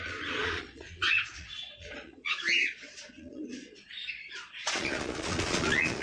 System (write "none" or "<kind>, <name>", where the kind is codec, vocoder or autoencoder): vocoder, Vocos